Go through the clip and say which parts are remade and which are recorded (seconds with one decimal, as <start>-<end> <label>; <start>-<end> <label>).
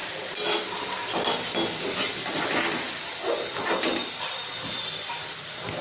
0.0-5.8 recorded